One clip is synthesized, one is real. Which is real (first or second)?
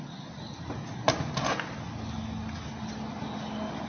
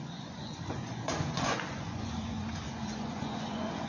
first